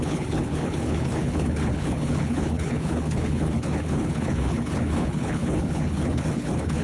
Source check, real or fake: fake